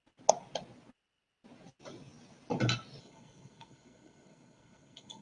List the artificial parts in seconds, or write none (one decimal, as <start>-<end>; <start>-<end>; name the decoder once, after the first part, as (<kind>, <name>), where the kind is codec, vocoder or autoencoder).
3.0-5.2 (codec, SNAC)